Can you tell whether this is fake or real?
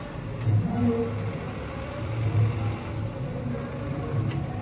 real